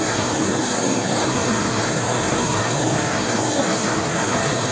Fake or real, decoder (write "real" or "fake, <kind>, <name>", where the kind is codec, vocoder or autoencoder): fake, codec, SNAC